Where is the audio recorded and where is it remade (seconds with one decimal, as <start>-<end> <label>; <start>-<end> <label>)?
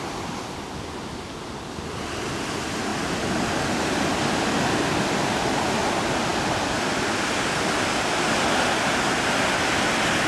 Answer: 0.0-10.3 recorded